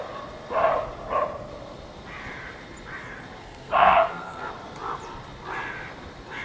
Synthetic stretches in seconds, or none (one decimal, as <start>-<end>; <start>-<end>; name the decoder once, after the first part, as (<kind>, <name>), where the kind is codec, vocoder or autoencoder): 3.4-4.5 (codec, SNAC)